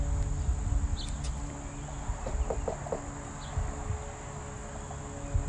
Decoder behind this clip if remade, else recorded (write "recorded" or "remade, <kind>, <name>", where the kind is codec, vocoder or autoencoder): recorded